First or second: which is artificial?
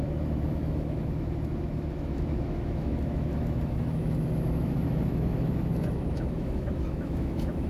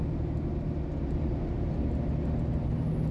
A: first